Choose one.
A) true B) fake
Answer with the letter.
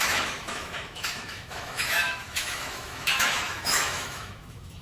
B